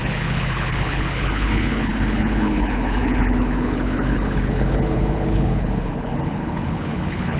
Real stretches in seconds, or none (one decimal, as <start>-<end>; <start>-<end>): none